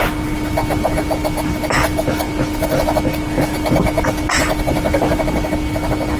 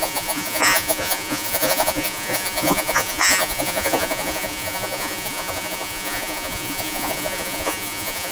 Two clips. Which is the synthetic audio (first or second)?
second